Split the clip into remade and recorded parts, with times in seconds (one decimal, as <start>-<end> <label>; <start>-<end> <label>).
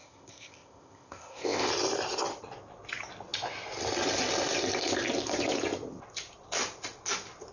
0.0-1.7 remade; 1.7-7.5 recorded